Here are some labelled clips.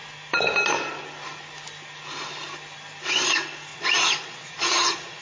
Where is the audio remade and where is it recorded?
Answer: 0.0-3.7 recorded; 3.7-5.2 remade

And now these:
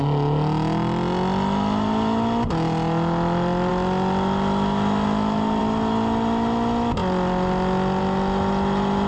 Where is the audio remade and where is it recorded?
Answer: 0.0-9.1 recorded